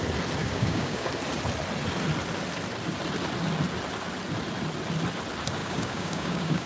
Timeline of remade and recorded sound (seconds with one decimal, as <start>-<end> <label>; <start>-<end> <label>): 0.0-0.4 recorded; 0.4-1.1 remade; 1.1-5.6 recorded; 5.6-6.7 remade